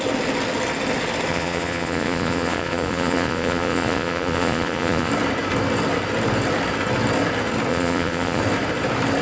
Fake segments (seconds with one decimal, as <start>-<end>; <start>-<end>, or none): 1.3-5.1; 7.7-8.4